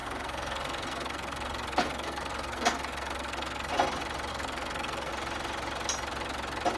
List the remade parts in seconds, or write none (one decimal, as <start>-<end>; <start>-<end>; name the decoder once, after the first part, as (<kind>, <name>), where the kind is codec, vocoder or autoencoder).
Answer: 0.0-3.7 (codec, SNAC); 4.3-5.1

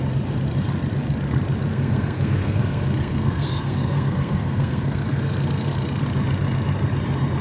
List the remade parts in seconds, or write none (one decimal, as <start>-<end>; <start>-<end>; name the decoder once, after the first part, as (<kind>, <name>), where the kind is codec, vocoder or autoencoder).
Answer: 1.7-6.0 (codec, SNAC)

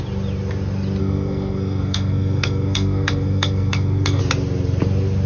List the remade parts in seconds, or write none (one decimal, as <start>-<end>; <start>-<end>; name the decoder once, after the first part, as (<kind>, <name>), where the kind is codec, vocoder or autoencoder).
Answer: 1.0-4.2 (codec, SNAC)

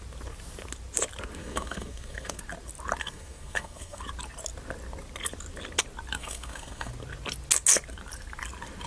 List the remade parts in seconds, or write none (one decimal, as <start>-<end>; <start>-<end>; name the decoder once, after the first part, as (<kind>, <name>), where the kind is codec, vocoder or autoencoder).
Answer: 1.4-2.4 (codec, SNAC); 3.0-4.0; 6.2-6.9